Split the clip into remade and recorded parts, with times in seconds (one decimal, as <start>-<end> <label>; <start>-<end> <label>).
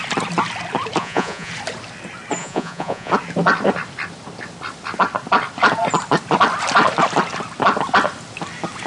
0.0-1.0 recorded; 1.0-1.5 remade; 1.5-2.4 recorded; 2.4-3.1 remade; 3.1-8.9 recorded